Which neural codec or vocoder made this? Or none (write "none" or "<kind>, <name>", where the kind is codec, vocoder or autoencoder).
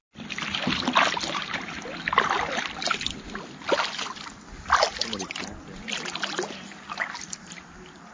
none